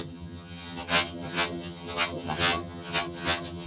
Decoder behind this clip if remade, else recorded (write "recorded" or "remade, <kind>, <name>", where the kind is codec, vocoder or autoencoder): remade, vocoder, HiFi-GAN